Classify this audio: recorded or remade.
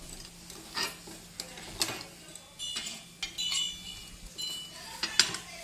recorded